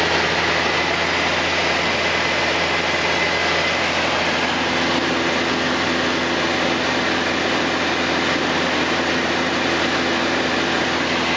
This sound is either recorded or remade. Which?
recorded